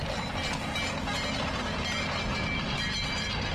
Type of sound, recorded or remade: recorded